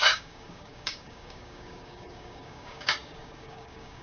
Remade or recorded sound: remade